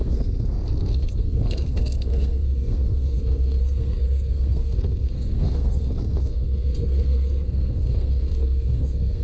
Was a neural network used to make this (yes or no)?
yes